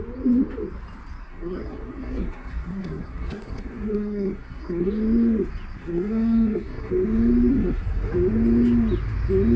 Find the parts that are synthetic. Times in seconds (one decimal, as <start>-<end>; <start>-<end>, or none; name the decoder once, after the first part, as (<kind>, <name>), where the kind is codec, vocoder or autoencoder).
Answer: 1.2-4.9 (codec, SNAC); 5.8-6.9; 7.5-8.1